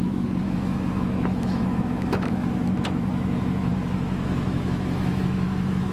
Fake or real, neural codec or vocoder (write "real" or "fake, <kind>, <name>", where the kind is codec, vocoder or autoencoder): fake, autoencoder, DAC-VAE